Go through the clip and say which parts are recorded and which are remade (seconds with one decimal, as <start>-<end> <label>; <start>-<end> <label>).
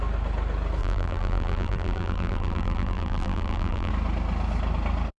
0.0-0.8 recorded; 0.8-3.9 remade; 3.9-5.2 recorded